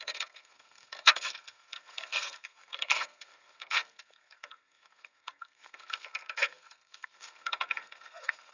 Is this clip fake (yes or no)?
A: yes